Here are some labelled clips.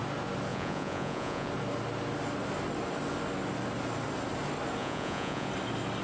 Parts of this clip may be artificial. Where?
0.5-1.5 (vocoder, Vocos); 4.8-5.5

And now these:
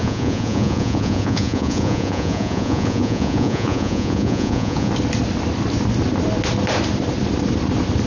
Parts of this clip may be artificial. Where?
0.0-4.9 (vocoder, Vocos)